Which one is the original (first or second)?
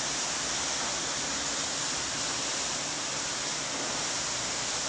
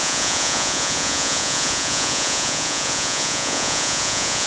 first